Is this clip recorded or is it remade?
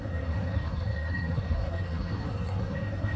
remade